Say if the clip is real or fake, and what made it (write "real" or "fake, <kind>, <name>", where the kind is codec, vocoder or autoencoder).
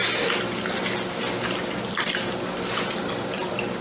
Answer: real